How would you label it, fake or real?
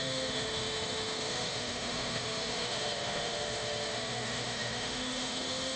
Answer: fake